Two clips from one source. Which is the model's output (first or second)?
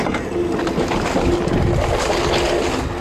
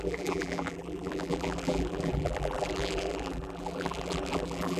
second